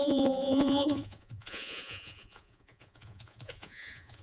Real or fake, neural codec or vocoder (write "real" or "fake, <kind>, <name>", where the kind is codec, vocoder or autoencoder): fake, vocoder, Vocos